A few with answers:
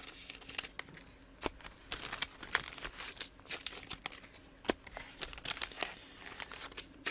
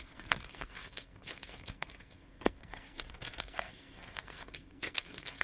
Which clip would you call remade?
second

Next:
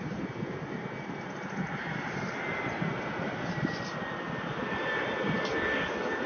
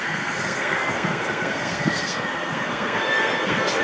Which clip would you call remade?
second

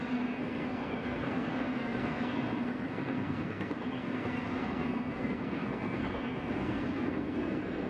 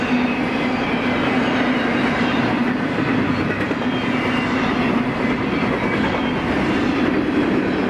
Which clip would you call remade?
first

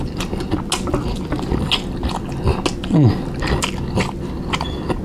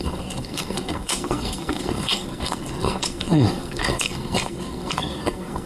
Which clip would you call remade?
second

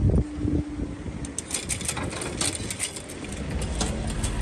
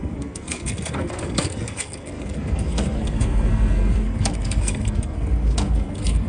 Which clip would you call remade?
second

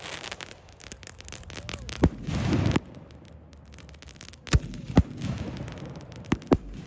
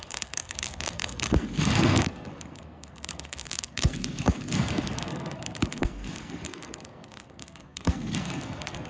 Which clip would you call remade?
second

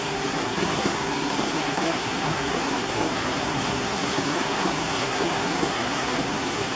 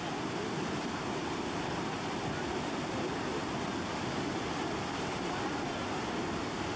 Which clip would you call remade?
first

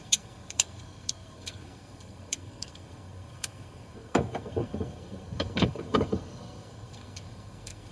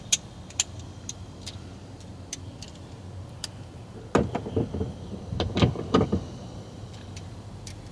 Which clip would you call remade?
first